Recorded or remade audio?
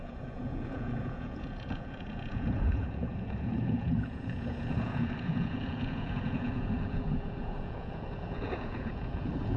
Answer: remade